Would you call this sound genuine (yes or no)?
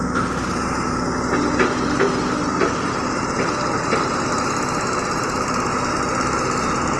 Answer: yes